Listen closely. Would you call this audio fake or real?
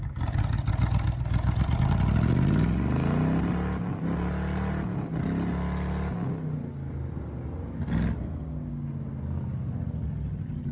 real